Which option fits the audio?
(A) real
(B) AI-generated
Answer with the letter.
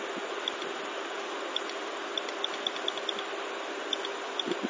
A